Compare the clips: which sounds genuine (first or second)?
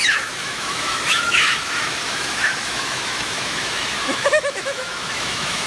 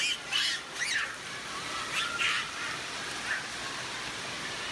second